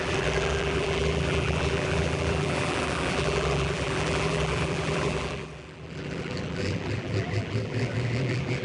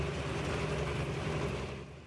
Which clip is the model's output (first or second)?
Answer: first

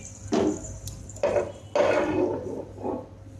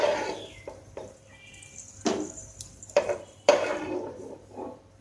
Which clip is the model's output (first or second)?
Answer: second